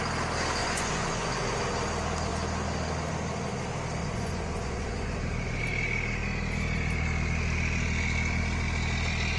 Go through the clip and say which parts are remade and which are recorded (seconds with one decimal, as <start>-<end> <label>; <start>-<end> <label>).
0.0-0.6 recorded; 0.6-1.6 remade; 1.6-4.0 recorded; 4.0-5.6 remade; 5.6-9.4 recorded

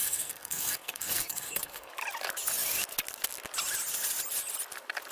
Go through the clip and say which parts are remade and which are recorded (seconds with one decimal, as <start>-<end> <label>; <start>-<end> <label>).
0.0-1.9 remade; 1.9-5.1 recorded

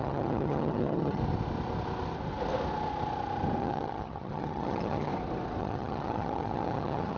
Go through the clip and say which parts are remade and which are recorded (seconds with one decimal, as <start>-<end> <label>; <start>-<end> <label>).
0.0-1.2 remade; 1.2-3.6 recorded; 3.6-5.1 remade; 5.1-5.6 recorded; 5.6-7.2 remade

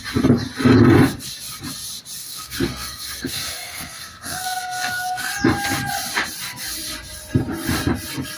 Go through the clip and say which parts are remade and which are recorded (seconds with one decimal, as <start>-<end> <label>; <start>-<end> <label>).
0.0-2.2 recorded; 2.2-5.3 remade; 5.3-8.4 recorded